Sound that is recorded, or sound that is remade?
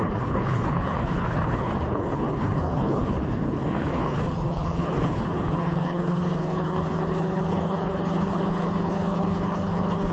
remade